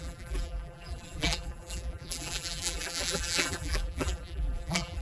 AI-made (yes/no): yes